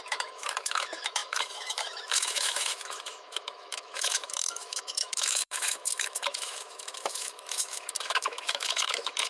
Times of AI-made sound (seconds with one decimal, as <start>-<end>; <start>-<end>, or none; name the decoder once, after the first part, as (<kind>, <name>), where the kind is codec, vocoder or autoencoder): 0.0-9.3 (autoencoder, DAC-VAE)